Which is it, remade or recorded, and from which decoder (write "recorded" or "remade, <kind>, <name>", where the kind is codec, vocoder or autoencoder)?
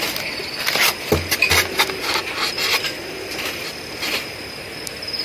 recorded